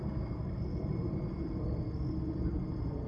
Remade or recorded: recorded